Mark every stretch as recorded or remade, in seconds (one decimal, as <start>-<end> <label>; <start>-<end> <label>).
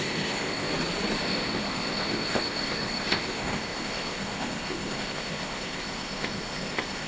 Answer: 0.0-0.7 remade; 0.7-1.2 recorded; 1.2-7.1 remade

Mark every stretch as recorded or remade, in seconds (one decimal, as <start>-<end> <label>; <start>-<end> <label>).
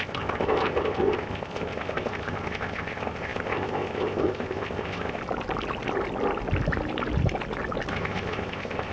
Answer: 0.0-5.2 remade; 5.2-7.9 recorded; 7.9-8.9 remade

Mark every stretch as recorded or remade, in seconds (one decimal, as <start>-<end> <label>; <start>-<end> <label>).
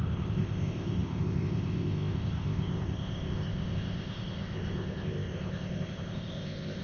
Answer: 0.0-6.8 remade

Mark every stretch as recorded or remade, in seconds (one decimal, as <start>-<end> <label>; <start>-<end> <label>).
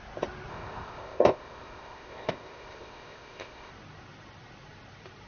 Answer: 0.0-0.5 recorded; 0.5-3.7 remade; 3.7-5.3 recorded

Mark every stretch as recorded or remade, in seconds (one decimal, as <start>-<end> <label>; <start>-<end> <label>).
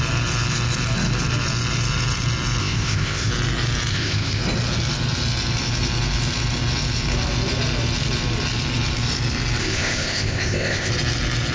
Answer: 0.0-2.6 recorded; 2.6-3.3 remade; 3.3-3.9 recorded; 3.9-4.4 remade; 4.4-9.6 recorded; 9.6-10.9 remade; 10.9-11.5 recorded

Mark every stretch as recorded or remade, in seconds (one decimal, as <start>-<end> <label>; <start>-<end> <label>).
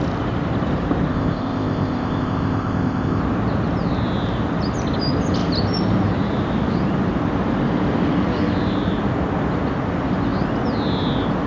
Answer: 0.0-1.1 recorded; 1.1-3.2 remade; 3.2-11.5 recorded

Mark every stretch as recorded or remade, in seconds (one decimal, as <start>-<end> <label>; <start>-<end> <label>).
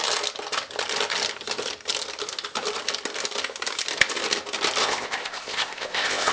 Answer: 0.0-4.8 recorded; 4.8-6.3 remade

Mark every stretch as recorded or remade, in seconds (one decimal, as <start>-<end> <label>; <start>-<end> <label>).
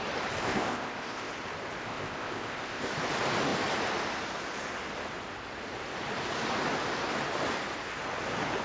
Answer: 0.0-0.4 recorded; 0.4-1.3 remade; 1.3-1.8 recorded; 1.8-2.9 remade; 2.9-8.6 recorded